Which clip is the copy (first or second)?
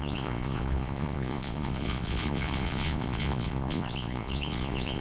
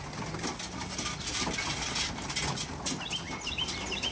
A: first